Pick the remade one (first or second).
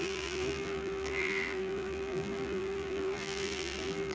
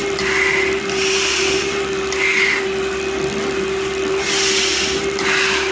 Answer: first